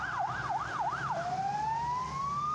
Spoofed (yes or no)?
no